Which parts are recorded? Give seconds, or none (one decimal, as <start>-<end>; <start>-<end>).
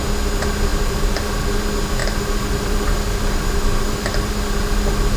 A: 0.0-0.7; 1.6-2.0